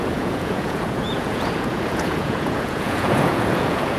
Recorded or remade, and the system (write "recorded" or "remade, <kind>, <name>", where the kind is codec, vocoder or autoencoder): remade, vocoder, Vocos